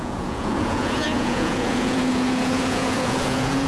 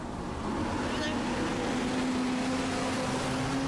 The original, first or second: second